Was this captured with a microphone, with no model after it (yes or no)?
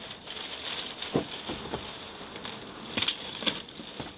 yes